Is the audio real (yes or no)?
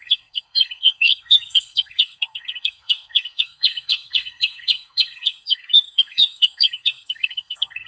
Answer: no